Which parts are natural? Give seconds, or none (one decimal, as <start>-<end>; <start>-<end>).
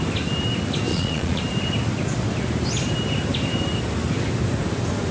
0.0-0.9; 1.4-5.1